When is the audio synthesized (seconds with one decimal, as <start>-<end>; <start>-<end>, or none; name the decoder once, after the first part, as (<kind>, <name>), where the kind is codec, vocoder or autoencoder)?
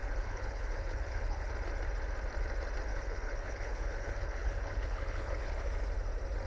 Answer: 0.0-1.5 (codec, HILCodec); 2.9-5.5